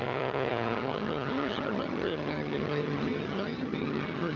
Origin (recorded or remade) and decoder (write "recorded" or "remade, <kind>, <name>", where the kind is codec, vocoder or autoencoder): remade, vocoder, HiFi-GAN